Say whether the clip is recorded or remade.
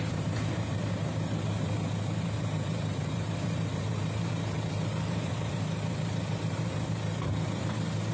remade